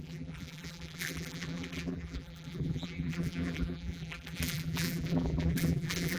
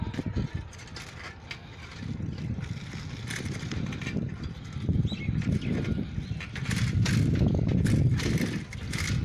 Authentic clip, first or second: second